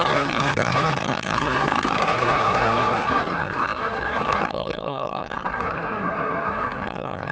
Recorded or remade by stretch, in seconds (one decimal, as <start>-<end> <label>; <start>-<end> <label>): 0.0-7.3 remade